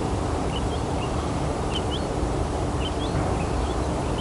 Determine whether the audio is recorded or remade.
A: remade